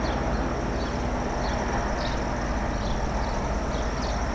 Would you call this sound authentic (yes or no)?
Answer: yes